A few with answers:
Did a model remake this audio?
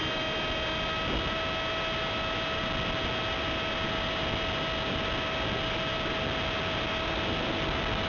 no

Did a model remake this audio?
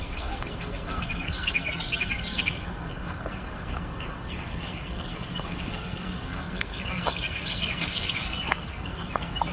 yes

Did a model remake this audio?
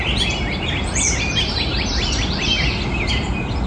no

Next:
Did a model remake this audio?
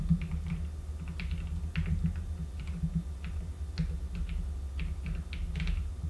no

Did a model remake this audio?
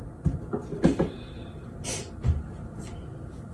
no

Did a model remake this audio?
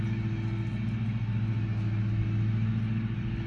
no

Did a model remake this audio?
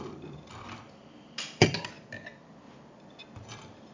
no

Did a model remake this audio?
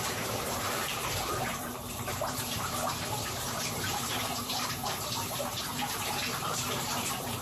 yes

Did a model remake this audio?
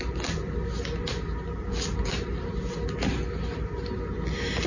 no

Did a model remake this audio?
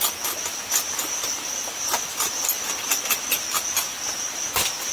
no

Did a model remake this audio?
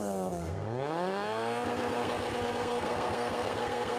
yes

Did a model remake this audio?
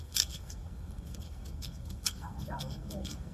yes